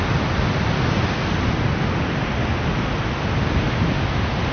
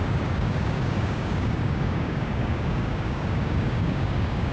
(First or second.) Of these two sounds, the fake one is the second